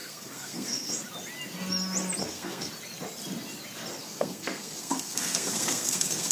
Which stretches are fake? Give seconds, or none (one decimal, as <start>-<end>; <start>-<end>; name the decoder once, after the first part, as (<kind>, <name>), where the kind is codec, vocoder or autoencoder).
0.0-1.0 (codec, SNAC); 2.2-2.7; 4.0-6.3

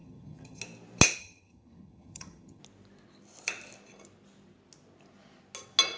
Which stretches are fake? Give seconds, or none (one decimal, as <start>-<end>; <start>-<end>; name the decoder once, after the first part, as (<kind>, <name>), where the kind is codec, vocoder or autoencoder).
0.0-0.6 (vocoder, HiFi-GAN); 1.2-2.6

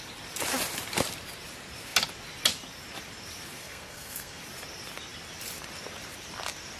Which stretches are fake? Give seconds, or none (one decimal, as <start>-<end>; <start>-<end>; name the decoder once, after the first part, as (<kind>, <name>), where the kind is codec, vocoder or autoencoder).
3.6-4.4 (codec, SNAC)

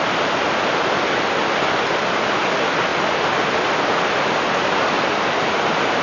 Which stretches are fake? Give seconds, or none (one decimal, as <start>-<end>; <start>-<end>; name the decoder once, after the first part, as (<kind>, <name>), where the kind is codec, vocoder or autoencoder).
none

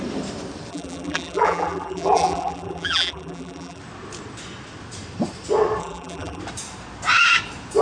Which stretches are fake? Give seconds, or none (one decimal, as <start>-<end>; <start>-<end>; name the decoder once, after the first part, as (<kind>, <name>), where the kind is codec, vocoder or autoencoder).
0.7-3.8 (vocoder, BigVGAN v2); 5.8-6.4

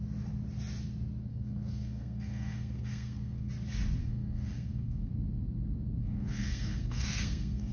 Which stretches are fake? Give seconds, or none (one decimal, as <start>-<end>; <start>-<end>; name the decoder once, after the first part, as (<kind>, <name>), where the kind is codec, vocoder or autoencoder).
1.3-3.5 (codec, SNAC); 4.0-5.1; 6.0-7.7